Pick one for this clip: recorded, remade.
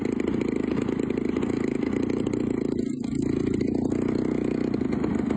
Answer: recorded